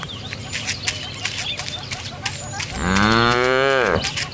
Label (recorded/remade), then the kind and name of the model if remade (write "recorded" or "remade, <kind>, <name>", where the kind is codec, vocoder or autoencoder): recorded